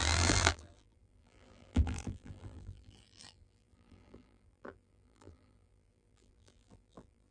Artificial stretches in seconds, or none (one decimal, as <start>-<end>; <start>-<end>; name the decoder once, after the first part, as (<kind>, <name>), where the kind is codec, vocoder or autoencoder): 0.0-7.3 (vocoder, BigVGAN v2)